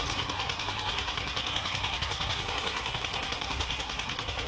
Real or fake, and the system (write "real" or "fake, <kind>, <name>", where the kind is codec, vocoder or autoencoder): fake, codec, SNAC